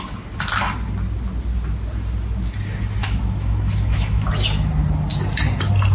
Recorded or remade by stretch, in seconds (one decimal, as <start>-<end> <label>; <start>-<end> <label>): 0.0-3.0 recorded; 3.0-4.3 remade; 4.3-5.9 recorded